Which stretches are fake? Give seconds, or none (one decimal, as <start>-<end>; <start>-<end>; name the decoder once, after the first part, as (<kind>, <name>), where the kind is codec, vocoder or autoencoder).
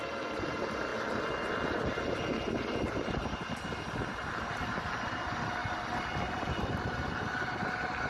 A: none